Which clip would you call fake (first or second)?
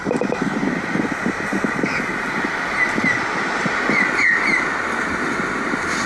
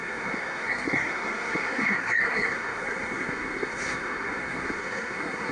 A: second